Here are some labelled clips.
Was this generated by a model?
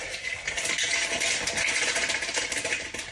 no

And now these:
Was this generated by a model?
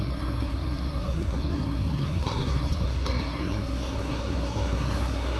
yes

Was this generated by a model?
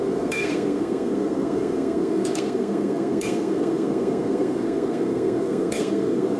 yes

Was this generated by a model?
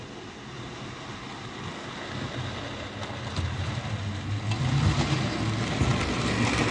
no